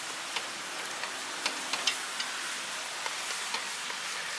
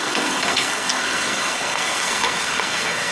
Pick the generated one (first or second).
second